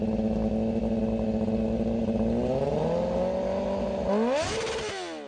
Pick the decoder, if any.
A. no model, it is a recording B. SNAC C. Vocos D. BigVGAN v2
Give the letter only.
A